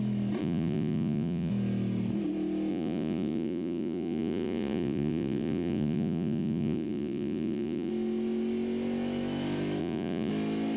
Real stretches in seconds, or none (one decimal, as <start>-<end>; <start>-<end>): 0.0-0.4; 1.5-2.7; 7.9-9.8; 10.3-10.8